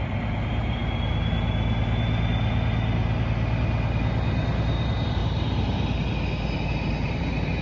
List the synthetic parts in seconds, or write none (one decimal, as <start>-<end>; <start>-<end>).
0.0-0.8; 4.6-5.2; 6.9-7.6